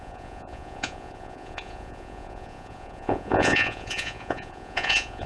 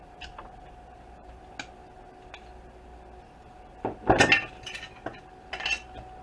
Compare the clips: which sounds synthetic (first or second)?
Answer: first